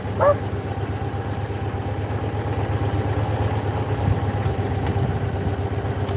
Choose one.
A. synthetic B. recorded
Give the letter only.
B